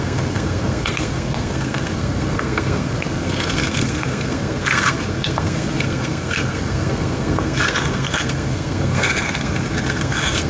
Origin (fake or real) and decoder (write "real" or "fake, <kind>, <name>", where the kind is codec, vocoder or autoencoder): fake, codec, SNAC